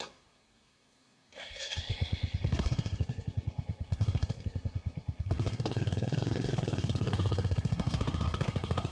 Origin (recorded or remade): remade